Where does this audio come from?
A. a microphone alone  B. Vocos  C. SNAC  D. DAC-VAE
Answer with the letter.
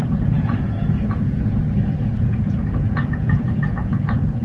B